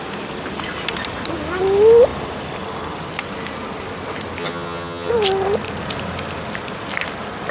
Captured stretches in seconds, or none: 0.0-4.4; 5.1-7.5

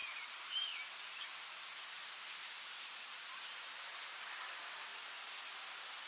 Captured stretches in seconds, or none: 0.0-6.1

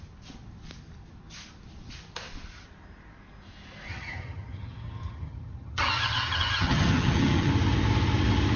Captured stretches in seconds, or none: 0.0-3.9; 7.5-8.6

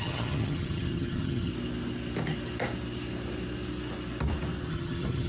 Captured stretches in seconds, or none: 1.5-4.7

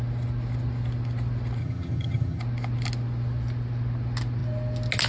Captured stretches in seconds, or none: 0.0-1.6; 2.4-5.1

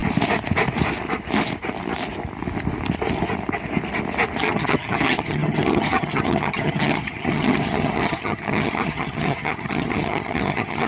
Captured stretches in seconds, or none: 0.0-4.4

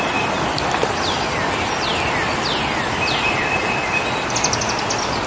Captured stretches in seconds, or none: 0.0-5.3

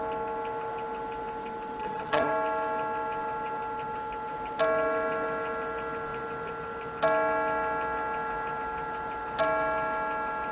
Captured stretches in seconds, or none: 0.0-1.8; 2.3-10.5